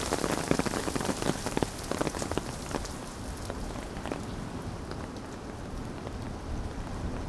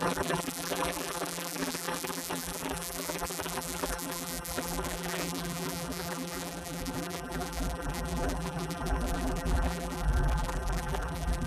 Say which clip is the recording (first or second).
first